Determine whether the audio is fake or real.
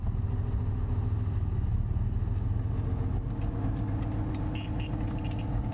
real